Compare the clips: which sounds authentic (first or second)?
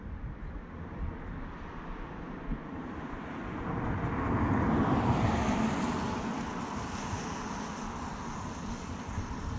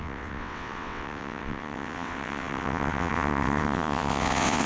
first